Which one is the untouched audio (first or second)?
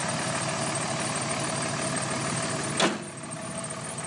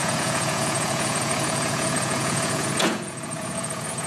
first